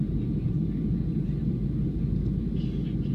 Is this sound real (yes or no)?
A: yes